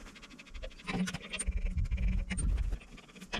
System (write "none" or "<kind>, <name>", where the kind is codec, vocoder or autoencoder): none